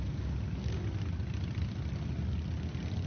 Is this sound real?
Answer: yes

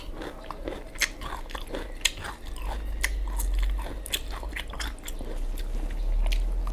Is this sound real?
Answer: yes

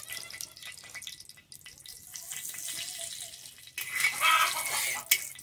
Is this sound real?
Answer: yes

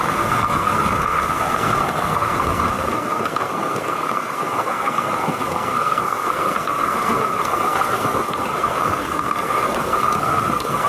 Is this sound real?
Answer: no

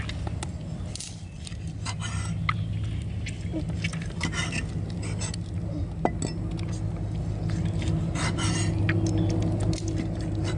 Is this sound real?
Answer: yes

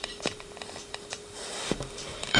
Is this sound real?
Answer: no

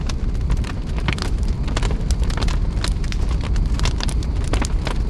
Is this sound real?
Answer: yes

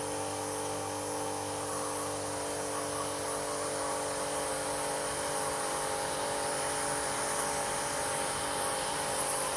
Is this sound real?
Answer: yes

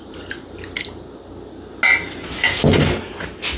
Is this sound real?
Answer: yes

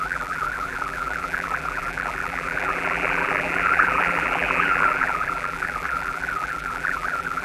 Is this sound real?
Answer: no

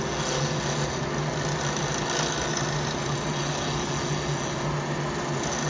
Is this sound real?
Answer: yes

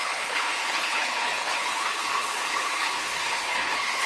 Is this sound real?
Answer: no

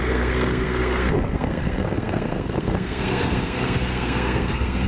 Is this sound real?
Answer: no